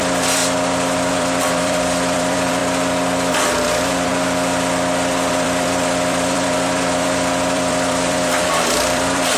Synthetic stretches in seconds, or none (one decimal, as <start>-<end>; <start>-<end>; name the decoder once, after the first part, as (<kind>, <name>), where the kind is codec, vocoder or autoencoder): 0.0-0.4 (vocoder, BigVGAN v2); 1.1-2.6; 3.3-4.1; 5.3-9.4